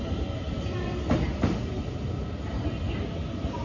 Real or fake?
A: real